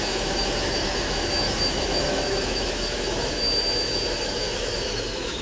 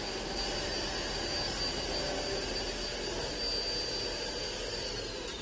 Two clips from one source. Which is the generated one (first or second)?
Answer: first